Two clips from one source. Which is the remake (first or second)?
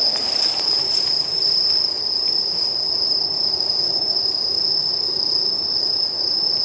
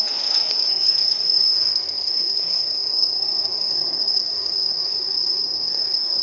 second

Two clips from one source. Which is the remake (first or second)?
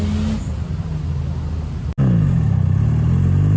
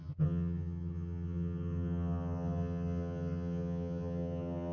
second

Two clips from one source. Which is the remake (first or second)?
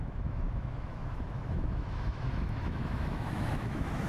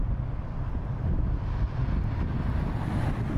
first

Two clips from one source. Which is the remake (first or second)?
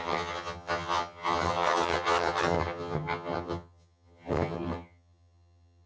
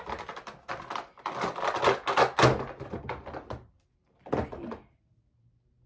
first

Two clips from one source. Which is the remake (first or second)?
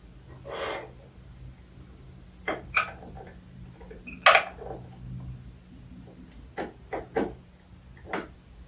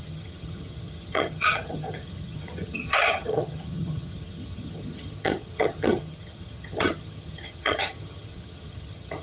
second